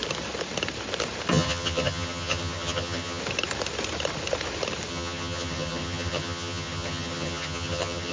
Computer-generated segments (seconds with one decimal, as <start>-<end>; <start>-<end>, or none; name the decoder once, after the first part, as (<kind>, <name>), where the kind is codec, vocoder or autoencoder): 1.3-3.2 (vocoder, HiFi-GAN); 4.9-8.1